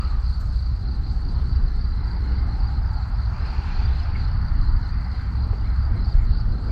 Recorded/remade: remade